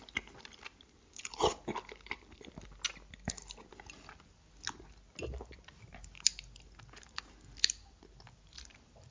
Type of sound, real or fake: real